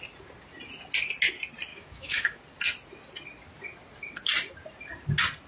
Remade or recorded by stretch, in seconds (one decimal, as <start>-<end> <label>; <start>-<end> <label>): 0.0-1.7 recorded; 1.7-2.4 remade; 2.4-5.5 recorded